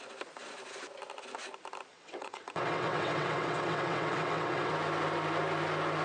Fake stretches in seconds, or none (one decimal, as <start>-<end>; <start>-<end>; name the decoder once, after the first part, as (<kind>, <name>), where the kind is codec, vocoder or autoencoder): 1.9-4.7 (vocoder, WaveNeXt)